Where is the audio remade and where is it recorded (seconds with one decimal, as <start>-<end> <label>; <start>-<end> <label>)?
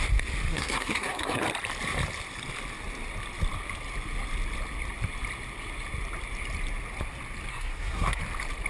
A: 0.0-0.5 recorded; 0.5-1.4 remade; 1.4-7.5 recorded; 7.5-8.2 remade; 8.2-8.7 recorded